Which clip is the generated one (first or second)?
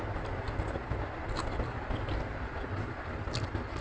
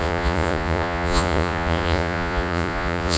second